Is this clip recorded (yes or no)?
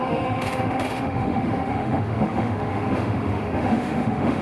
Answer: no